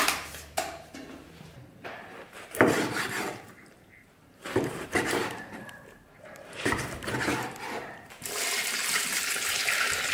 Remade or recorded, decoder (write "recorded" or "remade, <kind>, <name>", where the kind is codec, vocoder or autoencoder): remade, vocoder, BigVGAN v2